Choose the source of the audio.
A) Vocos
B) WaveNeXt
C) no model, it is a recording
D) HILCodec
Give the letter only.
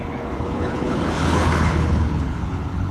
D